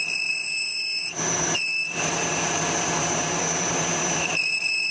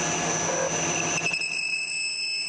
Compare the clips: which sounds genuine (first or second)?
second